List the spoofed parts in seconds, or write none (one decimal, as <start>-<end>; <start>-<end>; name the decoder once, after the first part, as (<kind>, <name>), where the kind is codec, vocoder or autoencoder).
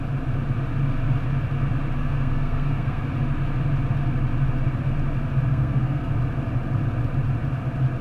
2.0-3.0 (codec, SNAC); 5.5-6.1